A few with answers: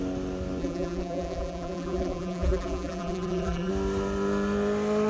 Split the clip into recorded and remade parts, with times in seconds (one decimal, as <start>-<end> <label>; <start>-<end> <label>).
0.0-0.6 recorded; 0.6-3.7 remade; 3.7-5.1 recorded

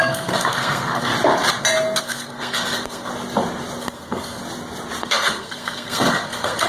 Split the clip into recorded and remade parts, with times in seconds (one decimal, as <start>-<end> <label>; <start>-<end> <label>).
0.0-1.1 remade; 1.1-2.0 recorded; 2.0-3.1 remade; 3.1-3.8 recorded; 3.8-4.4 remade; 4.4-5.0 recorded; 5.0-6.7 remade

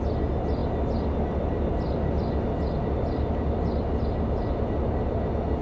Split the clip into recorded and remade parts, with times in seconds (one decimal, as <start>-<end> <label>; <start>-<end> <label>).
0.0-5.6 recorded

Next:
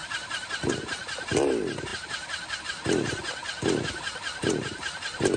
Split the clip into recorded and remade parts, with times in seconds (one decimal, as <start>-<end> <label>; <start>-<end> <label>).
0.0-5.4 recorded

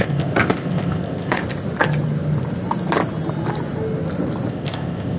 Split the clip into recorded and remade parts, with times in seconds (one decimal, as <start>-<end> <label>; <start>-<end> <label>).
0.0-1.4 remade; 1.4-4.5 recorded; 4.5-5.2 remade

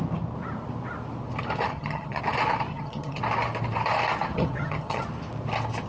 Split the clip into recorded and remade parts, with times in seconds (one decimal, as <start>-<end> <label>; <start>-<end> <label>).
0.0-1.7 recorded; 1.7-2.2 remade; 2.2-2.7 recorded; 2.7-3.2 remade; 3.2-4.3 recorded; 4.3-5.0 remade; 5.0-5.9 recorded